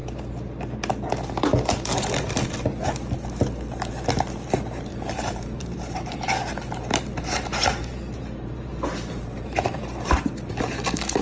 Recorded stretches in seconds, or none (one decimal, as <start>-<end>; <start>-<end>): 0.0-4.9; 9.8-11.2